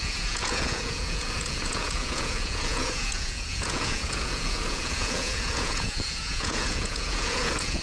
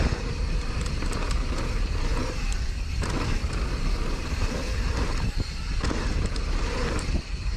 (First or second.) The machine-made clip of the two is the first